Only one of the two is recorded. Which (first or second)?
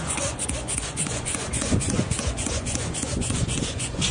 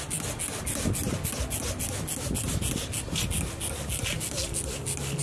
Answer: second